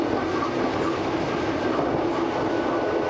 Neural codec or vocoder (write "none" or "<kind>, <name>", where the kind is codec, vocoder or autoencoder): none